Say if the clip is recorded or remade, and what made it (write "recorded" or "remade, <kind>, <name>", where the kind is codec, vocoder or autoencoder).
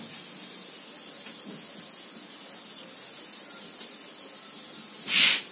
recorded